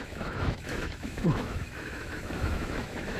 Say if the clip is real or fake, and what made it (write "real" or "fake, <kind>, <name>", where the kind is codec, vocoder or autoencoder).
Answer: fake, autoencoder, DAC-VAE